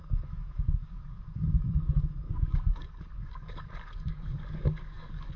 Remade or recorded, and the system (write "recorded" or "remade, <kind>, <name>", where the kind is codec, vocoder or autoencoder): remade, codec, DAC